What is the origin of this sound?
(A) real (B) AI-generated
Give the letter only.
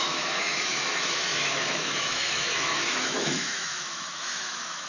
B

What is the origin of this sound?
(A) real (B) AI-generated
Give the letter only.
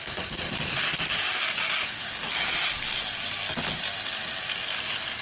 A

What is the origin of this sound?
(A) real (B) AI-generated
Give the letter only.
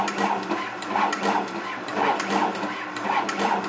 A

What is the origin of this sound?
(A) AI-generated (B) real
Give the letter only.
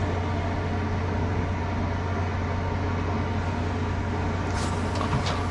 B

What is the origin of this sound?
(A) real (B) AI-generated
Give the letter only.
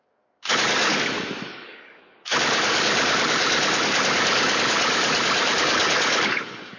B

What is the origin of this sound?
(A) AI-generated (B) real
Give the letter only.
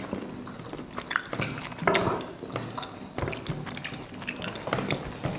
B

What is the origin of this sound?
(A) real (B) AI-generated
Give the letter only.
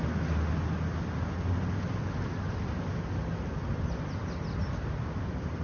A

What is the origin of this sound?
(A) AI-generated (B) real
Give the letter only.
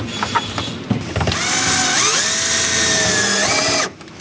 B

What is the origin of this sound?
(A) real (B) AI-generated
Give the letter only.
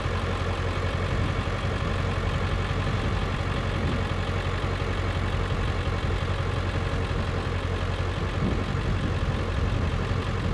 A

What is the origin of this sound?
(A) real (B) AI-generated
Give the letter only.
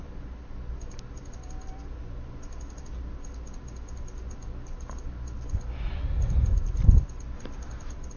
A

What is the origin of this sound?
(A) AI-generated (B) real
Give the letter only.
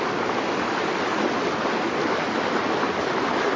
B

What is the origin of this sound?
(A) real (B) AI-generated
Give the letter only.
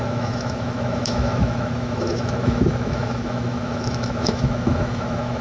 B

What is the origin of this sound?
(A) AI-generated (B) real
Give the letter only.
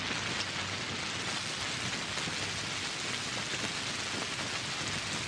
B